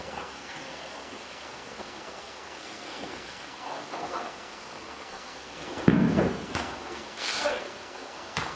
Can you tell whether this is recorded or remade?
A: remade